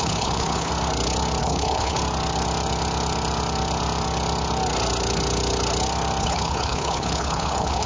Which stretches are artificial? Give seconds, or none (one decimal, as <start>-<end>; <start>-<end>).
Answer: 0.0-0.7; 1.4-2.0; 6.2-7.9